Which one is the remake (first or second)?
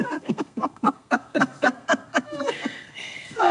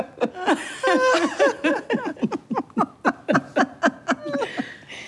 first